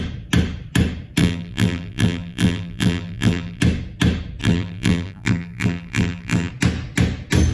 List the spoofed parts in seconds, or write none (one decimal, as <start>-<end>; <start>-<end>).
1.2-3.6; 4.4-6.5